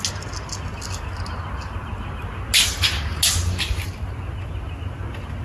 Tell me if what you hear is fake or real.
real